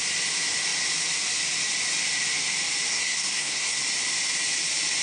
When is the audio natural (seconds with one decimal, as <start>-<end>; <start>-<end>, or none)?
0.0-2.9; 3.8-5.0